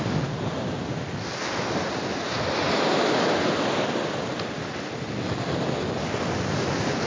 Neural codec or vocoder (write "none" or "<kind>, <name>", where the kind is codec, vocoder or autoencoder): none